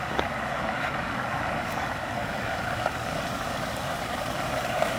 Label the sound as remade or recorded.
remade